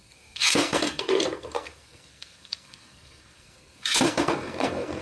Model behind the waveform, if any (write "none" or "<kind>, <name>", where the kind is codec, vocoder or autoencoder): codec, SNAC